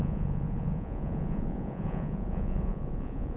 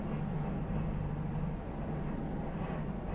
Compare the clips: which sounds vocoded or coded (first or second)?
first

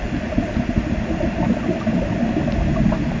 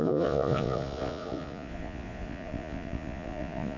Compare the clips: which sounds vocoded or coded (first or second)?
second